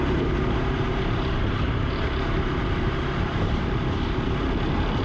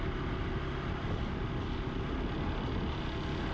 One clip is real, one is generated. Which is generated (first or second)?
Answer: first